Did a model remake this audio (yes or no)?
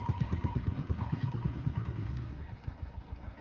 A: yes